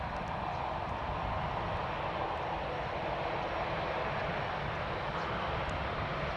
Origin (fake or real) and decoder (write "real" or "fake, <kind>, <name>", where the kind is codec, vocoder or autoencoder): real